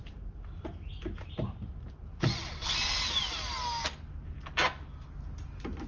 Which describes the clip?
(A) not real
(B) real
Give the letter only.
B